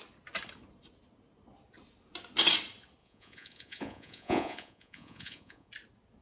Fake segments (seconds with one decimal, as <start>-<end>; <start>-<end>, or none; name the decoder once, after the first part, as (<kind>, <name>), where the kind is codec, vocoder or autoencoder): 3.0-5.7 (vocoder, Vocos)